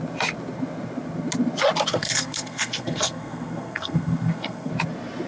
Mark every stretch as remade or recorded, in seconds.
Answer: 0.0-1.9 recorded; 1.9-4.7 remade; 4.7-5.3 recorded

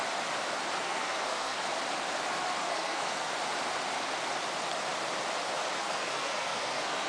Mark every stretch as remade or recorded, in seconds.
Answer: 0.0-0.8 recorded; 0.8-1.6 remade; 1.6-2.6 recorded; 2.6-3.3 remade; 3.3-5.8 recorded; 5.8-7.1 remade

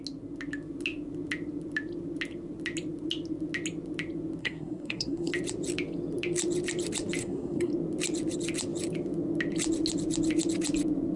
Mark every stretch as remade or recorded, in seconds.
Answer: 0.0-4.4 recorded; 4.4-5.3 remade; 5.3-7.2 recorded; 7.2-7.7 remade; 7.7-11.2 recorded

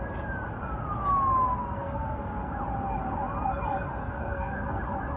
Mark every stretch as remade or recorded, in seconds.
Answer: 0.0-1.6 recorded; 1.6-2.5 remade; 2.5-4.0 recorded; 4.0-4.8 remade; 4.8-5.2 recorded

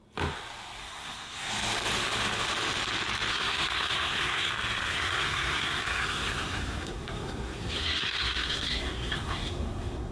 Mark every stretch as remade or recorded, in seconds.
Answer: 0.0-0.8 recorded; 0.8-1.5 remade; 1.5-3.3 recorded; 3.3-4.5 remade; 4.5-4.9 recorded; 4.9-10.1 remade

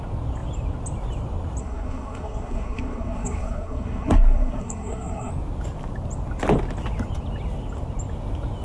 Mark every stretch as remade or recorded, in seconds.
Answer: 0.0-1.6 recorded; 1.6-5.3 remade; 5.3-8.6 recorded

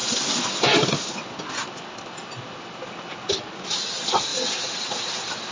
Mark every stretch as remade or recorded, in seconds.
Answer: 0.0-5.5 recorded